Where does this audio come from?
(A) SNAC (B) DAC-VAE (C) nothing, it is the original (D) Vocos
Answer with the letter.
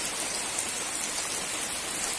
C